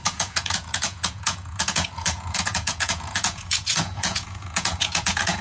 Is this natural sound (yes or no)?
no